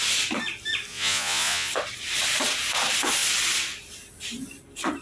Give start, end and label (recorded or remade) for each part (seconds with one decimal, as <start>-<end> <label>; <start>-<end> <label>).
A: 0.0-0.9 recorded; 0.9-1.7 remade; 1.7-5.0 recorded